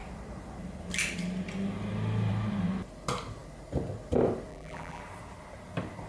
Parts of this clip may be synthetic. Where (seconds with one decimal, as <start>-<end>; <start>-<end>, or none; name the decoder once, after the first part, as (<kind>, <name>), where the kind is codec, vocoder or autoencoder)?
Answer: 4.5-5.0 (vocoder, BigVGAN v2)